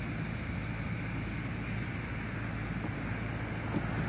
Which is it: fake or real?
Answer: real